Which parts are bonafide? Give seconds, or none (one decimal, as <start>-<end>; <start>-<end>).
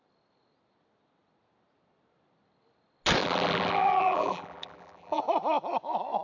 0.0-3.2; 5.2-6.2